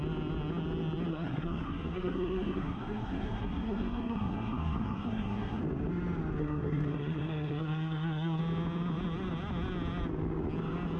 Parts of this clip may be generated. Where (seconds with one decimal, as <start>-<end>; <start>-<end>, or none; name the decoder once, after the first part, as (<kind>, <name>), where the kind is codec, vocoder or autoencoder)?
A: 1.1-5.6 (codec, SNAC); 6.4-8.4